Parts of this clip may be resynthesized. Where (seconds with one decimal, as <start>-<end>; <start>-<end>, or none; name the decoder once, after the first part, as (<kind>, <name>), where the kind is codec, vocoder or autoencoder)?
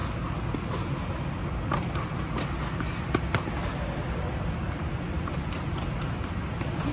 none